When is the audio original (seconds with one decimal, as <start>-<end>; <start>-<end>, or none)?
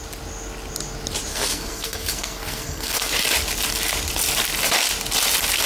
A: 0.0-1.3; 3.1-5.7